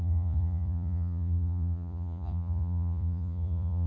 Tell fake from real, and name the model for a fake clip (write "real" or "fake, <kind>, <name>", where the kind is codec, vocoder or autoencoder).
fake, vocoder, Vocos